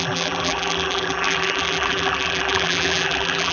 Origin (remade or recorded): remade